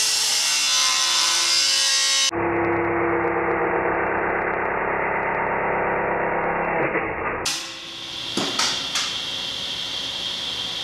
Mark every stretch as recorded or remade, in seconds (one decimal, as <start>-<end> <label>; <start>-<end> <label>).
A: 0.0-0.8 recorded; 0.8-1.9 remade; 1.9-3.6 recorded; 3.6-4.8 remade; 4.8-10.8 recorded